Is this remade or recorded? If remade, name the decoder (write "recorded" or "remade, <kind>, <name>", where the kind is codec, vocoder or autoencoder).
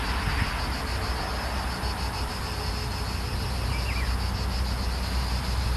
recorded